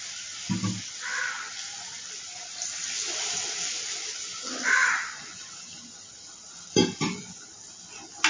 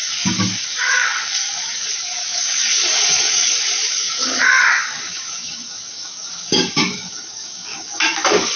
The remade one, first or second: second